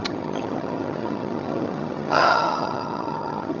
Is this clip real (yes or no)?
no